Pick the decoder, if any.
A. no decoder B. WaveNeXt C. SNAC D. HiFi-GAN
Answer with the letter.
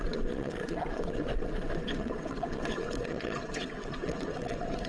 B